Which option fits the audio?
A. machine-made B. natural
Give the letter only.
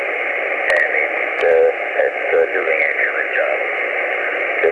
B